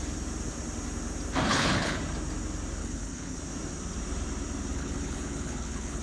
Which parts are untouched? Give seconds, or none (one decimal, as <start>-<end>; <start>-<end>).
0.0-1.5; 2.0-2.8; 3.4-4.7